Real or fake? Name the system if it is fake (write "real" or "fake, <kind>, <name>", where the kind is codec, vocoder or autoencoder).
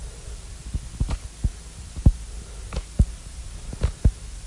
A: real